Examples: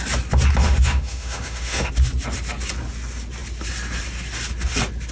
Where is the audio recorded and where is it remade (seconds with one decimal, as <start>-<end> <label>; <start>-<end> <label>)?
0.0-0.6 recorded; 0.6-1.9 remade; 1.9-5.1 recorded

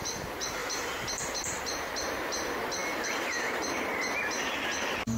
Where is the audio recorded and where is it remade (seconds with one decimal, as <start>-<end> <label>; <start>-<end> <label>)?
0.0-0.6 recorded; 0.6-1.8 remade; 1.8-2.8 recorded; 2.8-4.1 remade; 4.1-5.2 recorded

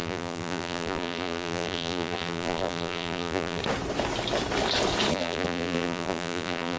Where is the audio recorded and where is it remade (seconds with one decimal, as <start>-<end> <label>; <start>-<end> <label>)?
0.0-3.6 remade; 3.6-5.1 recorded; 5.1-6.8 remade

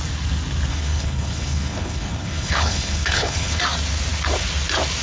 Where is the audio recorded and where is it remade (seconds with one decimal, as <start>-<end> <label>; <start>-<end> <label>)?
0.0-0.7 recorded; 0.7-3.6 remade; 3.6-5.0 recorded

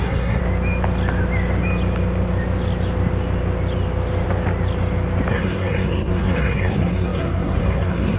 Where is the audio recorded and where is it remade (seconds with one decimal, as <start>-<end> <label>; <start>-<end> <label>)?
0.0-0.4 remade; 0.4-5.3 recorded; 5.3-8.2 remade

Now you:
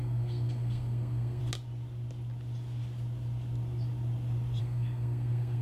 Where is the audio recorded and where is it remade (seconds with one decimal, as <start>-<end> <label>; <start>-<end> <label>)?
0.0-1.4 remade; 1.4-4.6 recorded; 4.6-5.6 remade